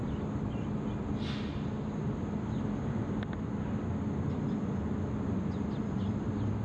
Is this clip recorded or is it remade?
recorded